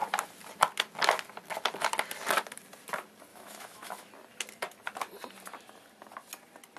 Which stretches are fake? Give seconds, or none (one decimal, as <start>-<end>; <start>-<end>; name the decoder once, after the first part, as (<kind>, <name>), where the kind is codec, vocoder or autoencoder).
3.3-4.1 (autoencoder, DAC-VAE)

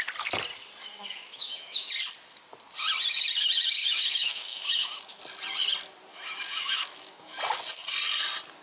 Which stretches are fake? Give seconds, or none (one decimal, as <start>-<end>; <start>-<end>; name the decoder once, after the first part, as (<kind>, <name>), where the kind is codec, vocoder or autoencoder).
0.8-1.9 (autoencoder, DAC-VAE); 3.8-5.2; 6.1-7.4

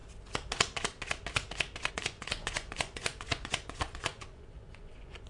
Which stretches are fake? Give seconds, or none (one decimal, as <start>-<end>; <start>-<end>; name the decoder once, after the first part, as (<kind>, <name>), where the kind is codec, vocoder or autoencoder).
1.9-5.3 (vocoder, Vocos)

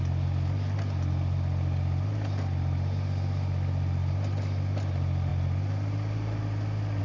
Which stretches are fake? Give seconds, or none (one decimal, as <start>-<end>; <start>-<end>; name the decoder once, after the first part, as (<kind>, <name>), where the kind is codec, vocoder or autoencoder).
none

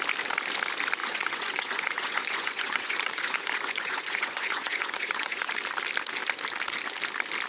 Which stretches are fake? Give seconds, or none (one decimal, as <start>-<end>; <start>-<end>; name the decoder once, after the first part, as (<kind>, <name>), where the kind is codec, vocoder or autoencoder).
1.0-5.5 (vocoder, Vocos)

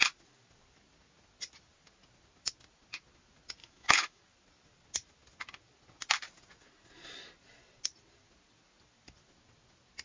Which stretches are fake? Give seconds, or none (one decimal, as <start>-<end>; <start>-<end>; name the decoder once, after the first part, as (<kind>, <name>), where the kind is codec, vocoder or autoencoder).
3.6-4.2 (autoencoder, DAC-VAE)

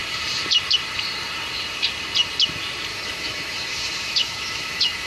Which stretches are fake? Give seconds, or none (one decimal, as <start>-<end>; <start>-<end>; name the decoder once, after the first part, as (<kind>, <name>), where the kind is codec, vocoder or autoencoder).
2.9-5.1 (autoencoder, DAC-VAE)

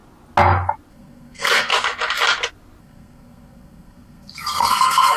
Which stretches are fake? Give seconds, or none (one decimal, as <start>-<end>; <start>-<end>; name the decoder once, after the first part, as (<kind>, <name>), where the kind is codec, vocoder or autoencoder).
0.9-1.7 (codec, SNAC); 2.8-5.2